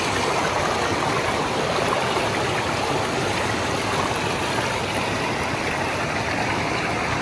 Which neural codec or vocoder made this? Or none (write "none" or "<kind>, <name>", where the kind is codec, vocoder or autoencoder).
none